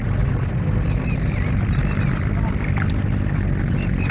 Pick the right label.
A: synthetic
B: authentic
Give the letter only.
B